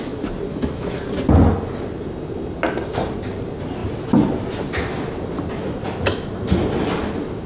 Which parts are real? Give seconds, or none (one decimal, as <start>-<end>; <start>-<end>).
0.0-0.5; 1.0-7.5